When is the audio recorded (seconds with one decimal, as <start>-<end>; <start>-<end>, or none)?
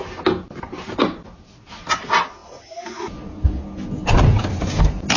0.0-5.2